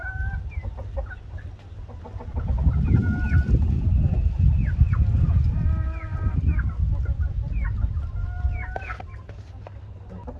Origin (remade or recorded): recorded